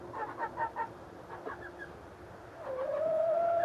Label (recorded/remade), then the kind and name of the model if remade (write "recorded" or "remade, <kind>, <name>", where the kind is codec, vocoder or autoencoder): recorded